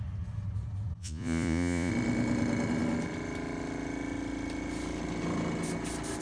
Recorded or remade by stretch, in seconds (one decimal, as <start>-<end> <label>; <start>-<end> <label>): 0.0-1.0 recorded; 1.0-1.9 remade; 1.9-6.2 recorded